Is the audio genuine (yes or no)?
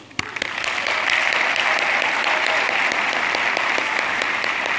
no